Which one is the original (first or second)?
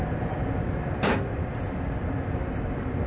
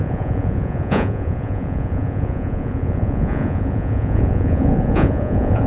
first